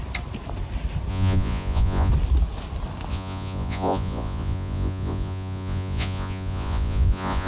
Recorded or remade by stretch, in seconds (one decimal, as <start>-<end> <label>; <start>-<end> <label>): 0.0-1.1 recorded; 1.1-2.1 remade; 2.1-3.1 recorded; 3.1-7.5 remade